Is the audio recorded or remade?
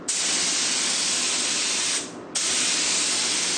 recorded